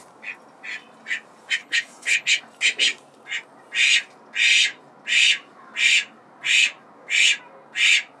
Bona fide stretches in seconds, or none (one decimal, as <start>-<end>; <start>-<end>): 0.0-1.6; 2.4-8.2